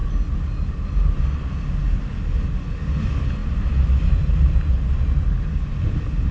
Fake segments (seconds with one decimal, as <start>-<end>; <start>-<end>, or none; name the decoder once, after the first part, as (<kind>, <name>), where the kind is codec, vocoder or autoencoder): 3.4-4.6 (vocoder, BigVGAN v2)